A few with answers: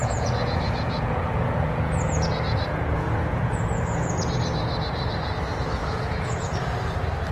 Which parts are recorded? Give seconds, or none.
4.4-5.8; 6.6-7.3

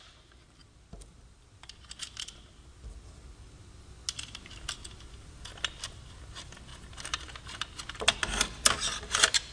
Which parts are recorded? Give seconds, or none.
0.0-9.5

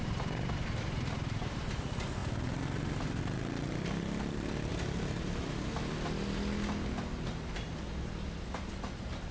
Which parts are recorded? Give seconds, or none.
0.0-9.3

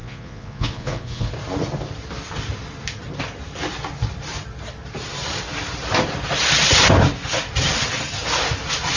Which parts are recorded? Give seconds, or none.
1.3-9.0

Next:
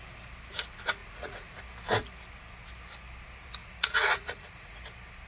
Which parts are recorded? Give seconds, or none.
0.0-1.0; 1.6-3.6; 4.8-5.3

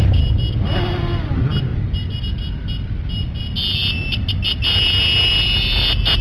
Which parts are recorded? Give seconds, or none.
0.0-6.2